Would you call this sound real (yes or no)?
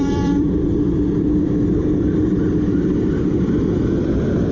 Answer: no